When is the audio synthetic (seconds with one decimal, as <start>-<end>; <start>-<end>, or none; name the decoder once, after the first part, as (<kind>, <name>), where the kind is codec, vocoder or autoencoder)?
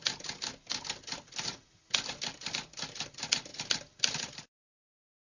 none